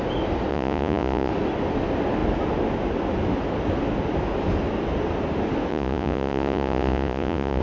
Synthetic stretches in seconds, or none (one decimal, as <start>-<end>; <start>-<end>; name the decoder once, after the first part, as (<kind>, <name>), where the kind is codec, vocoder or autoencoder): 0.5-1.3 (vocoder, Vocos); 5.7-7.6